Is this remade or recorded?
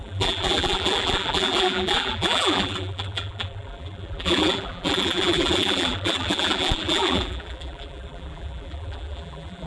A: remade